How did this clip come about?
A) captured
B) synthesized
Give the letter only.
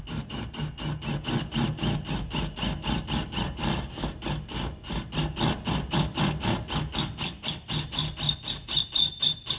A